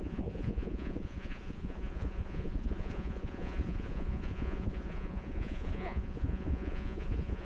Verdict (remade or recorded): remade